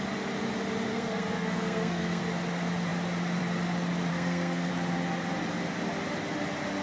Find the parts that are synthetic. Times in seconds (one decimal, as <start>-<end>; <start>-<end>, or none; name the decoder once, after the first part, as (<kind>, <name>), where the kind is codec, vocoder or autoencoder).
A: 0.9-2.2 (codec, SNAC); 4.1-4.7